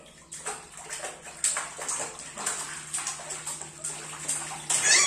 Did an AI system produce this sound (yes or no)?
no